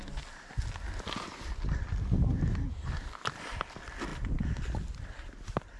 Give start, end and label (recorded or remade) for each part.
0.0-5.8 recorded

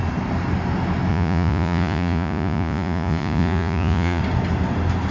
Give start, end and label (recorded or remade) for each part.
0.0-1.1 recorded; 1.1-4.2 remade; 4.2-5.1 recorded

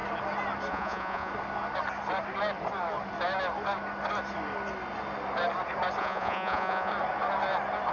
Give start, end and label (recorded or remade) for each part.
0.0-0.7 recorded; 0.7-1.3 remade; 1.3-6.0 recorded; 6.0-6.9 remade; 6.9-7.9 recorded

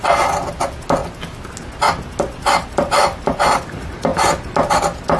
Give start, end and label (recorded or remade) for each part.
0.0-5.2 recorded

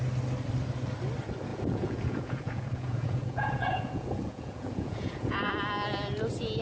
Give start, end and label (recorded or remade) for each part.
0.0-1.5 recorded; 1.5-5.5 remade; 5.5-6.6 recorded

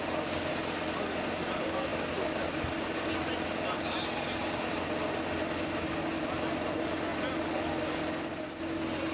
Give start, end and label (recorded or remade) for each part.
0.0-9.1 recorded

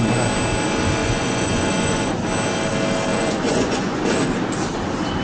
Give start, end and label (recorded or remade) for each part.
0.0-1.0 recorded; 1.0-2.1 remade; 2.1-3.1 recorded; 3.1-4.0 remade; 4.0-5.2 recorded